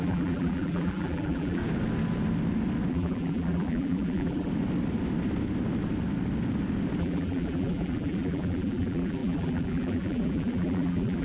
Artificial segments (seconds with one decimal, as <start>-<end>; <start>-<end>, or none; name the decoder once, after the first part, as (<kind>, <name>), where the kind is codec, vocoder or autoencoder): 0.0-1.6 (vocoder, BigVGAN v2); 2.9-4.5; 7.0-11.2